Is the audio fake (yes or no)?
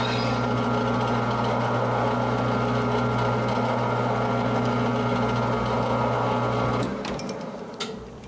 no